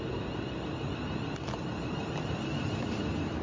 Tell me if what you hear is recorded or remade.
recorded